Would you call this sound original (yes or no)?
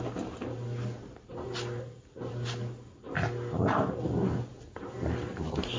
yes